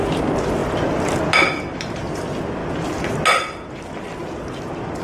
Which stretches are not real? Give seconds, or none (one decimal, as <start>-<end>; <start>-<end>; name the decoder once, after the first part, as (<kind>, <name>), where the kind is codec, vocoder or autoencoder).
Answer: none